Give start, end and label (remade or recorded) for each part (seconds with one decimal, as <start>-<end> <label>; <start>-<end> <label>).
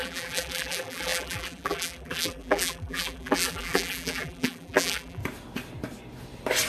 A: 0.0-5.2 remade; 5.2-6.7 recorded